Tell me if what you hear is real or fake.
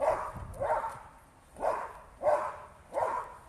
fake